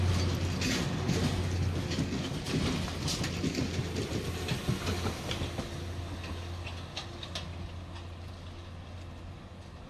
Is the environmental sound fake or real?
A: real